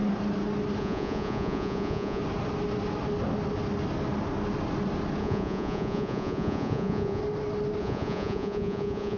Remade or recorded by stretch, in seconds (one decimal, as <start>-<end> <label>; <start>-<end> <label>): 0.0-0.8 recorded; 0.8-2.2 remade; 2.2-5.2 recorded; 5.2-7.2 remade; 7.2-7.8 recorded; 7.8-9.2 remade